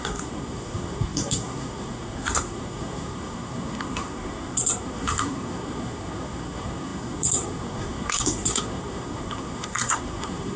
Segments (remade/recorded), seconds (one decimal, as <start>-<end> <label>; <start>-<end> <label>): 0.0-10.6 remade